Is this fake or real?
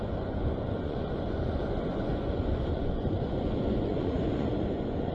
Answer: fake